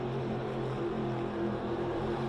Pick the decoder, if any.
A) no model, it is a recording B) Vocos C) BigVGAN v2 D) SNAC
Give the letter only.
C